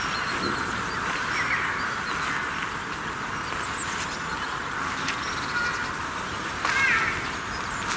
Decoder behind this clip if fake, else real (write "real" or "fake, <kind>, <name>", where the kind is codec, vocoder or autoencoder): real